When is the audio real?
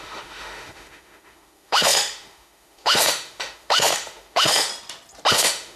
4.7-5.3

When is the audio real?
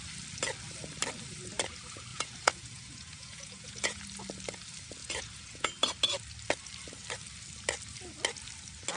0.0-2.1; 4.0-5.0; 5.7-9.0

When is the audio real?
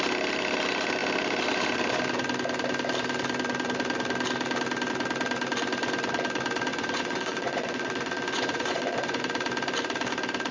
0.0-6.7; 9.2-10.5